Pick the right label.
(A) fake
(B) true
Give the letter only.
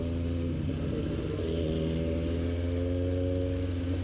B